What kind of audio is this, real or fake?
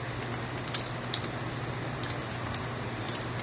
real